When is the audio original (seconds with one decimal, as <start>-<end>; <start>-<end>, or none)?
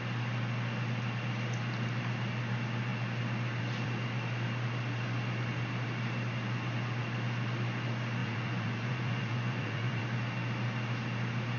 0.0-8.2; 10.0-11.6